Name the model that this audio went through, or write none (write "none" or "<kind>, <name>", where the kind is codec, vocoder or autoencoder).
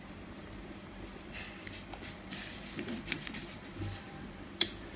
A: vocoder, BigVGAN v2